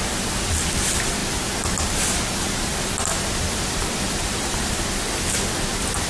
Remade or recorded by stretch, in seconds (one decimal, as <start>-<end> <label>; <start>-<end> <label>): 0.0-6.1 recorded